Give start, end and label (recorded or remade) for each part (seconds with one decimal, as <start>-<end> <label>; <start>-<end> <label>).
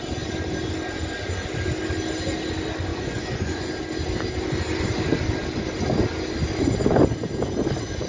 0.0-2.9 recorded; 2.9-3.7 remade; 3.7-8.1 recorded